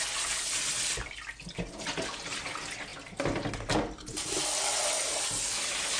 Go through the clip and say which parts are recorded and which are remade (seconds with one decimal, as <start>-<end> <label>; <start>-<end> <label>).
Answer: 0.0-6.0 recorded